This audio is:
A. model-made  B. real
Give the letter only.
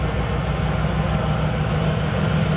B